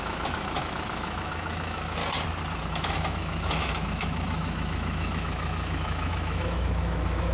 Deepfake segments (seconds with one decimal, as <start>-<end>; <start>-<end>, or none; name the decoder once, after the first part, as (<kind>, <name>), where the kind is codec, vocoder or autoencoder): 0.0-2.0 (autoencoder, DAC-VAE); 2.6-7.3